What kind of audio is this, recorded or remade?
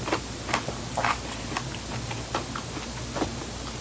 recorded